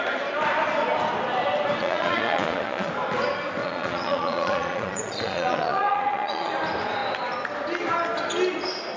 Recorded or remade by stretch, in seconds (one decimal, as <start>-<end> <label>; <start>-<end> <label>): 0.0-1.8 recorded; 1.8-2.9 remade; 2.9-3.6 recorded; 3.6-6.5 remade; 6.5-9.0 recorded